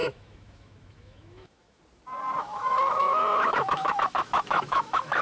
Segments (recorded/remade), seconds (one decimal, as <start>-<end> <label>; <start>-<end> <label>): 0.0-1.8 remade; 1.8-2.4 recorded; 2.4-5.2 remade